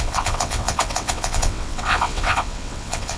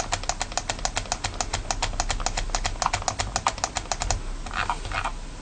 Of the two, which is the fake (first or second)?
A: first